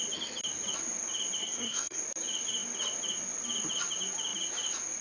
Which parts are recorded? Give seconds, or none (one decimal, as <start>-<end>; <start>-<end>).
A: 0.0-1.4; 2.0-5.0